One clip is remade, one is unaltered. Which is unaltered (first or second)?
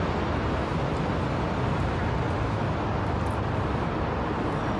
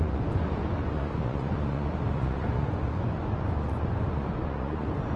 first